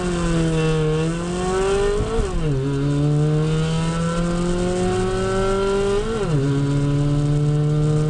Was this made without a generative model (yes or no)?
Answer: yes